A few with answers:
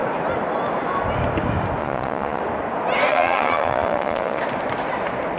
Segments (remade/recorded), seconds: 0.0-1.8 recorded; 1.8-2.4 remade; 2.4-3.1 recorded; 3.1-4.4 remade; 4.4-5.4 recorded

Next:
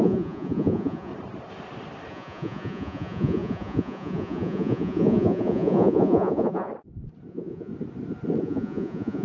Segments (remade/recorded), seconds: 0.0-1.1 remade; 1.1-2.1 recorded; 2.1-6.7 remade; 6.7-7.3 recorded; 7.3-7.7 remade; 7.7-8.4 recorded; 8.4-9.2 remade

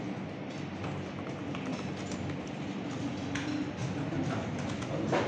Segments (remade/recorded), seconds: 0.0-5.3 recorded